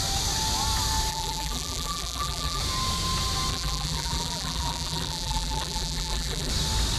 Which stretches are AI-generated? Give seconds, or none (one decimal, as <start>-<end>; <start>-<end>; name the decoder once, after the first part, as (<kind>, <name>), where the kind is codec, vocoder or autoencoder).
1.1-2.6 (vocoder, BigVGAN v2); 3.5-6.5